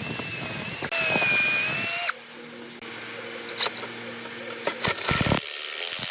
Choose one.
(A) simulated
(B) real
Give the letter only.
B